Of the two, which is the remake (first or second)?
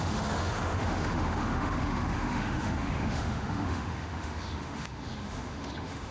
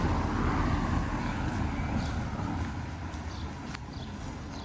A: first